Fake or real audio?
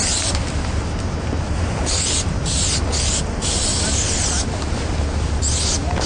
real